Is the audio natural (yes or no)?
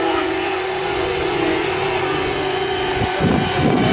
no